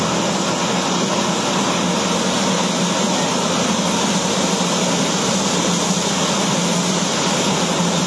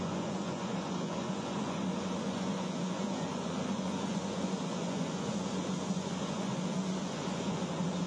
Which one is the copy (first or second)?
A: second